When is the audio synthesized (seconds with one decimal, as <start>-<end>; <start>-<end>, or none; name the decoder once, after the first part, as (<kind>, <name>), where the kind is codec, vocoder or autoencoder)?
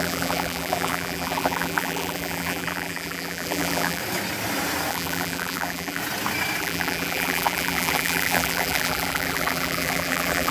0.0-4.0 (vocoder, BigVGAN v2); 4.9-6.0; 6.6-10.5